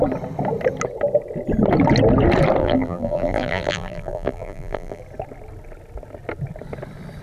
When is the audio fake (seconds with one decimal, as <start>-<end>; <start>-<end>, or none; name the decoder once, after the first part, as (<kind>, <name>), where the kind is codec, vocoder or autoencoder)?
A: 2.6-5.0 (vocoder, BigVGAN v2)